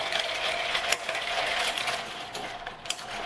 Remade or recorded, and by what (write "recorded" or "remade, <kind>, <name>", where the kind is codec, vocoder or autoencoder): remade, vocoder, Vocos